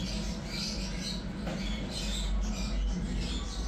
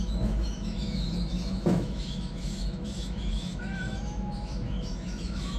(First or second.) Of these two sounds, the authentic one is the first